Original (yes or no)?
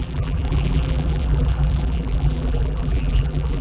no